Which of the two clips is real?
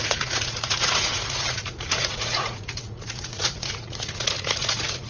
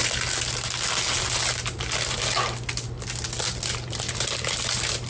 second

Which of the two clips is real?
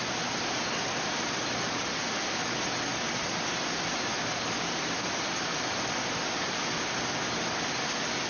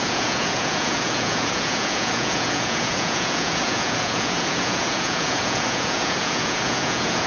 first